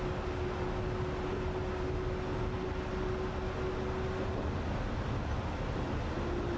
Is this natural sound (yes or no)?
yes